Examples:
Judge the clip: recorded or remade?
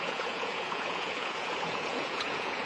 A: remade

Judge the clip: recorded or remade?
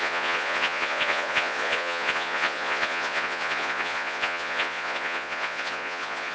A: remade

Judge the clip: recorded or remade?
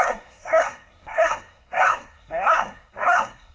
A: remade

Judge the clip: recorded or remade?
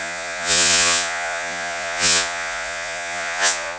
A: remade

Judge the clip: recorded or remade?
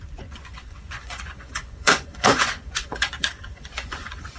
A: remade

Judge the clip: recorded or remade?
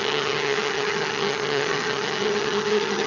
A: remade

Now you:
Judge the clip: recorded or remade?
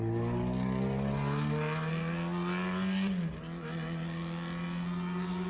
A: recorded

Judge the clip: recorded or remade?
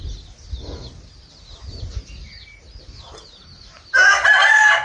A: recorded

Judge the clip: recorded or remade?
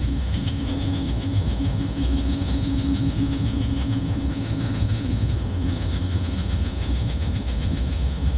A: remade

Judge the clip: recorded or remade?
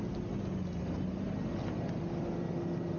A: recorded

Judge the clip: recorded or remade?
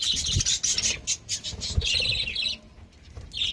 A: recorded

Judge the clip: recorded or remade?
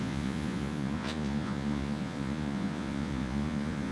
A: remade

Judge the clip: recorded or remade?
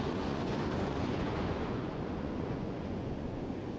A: remade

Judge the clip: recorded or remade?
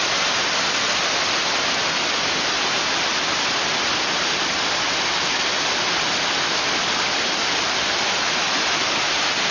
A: recorded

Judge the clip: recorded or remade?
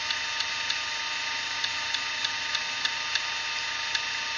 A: recorded